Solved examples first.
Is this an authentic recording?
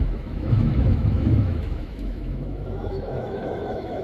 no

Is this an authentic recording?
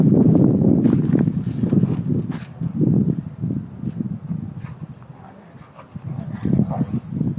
yes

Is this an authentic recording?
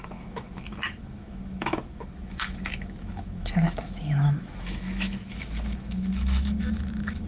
no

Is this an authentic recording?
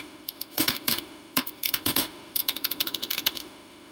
no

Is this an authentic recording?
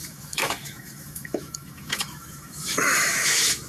no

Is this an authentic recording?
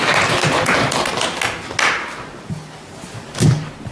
yes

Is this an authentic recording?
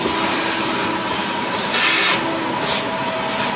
yes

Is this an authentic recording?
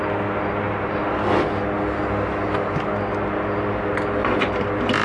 yes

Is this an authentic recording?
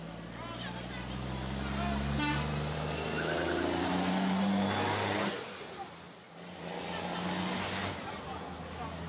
yes